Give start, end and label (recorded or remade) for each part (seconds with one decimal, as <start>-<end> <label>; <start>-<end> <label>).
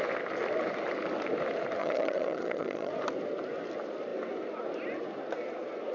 0.0-1.8 recorded; 1.8-2.9 remade; 2.9-5.9 recorded